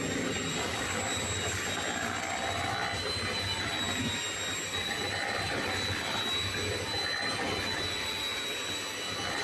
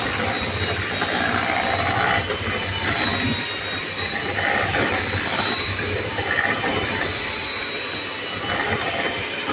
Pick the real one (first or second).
first